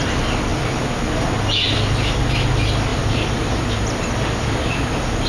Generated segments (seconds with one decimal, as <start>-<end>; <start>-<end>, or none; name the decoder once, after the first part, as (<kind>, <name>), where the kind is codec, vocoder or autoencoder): 2.9-3.6 (vocoder, BigVGAN v2)